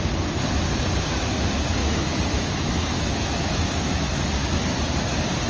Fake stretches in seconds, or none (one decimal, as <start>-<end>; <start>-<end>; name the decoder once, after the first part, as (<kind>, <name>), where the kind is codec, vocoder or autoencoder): 1.8-4.2 (autoencoder, DAC-VAE)